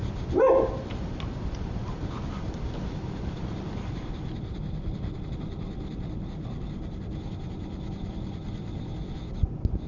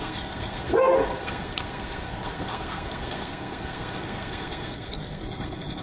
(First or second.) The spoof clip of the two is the second